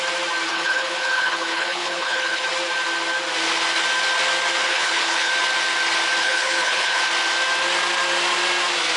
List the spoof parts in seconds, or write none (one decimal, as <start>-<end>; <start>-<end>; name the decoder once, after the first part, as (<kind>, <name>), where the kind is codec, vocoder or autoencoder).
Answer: 0.5-2.4 (codec, HILCodec); 4.6-5.3; 6.2-7.0

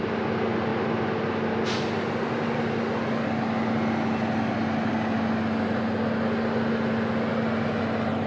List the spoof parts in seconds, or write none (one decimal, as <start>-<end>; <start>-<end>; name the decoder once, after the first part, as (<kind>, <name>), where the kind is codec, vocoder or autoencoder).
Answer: none

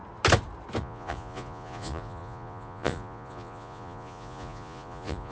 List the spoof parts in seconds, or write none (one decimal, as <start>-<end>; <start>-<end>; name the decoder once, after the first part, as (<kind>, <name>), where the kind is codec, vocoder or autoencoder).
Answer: 0.8-5.3 (vocoder, Vocos)

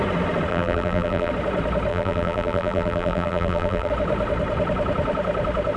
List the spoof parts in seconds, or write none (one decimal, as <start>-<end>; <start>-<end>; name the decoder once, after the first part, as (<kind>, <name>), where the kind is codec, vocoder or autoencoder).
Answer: 0.5-1.3 (vocoder, BigVGAN v2); 1.9-3.9